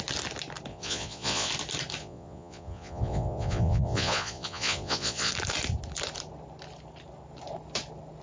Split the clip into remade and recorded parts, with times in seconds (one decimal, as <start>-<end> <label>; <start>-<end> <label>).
0.0-0.7 recorded; 0.7-1.5 remade; 1.5-2.0 recorded; 2.0-5.3 remade; 5.3-8.2 recorded